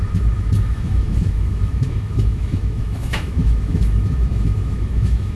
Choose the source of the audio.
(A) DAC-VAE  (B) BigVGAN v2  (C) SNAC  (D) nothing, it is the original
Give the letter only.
A